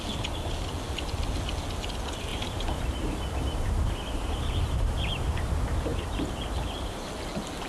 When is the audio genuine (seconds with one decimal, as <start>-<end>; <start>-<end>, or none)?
0.0-2.3; 5.5-5.9; 7.1-7.7